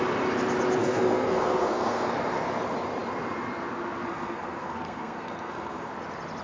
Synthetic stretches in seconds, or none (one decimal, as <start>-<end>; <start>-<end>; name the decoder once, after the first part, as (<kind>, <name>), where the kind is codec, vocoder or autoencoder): 0.8-2.1 (codec, SNAC); 4.1-5.9